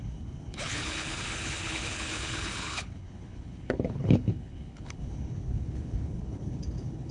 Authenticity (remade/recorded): remade